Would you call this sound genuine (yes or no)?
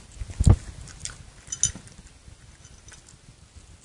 yes